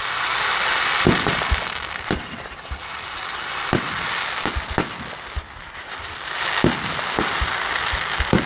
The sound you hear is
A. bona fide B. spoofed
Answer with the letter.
A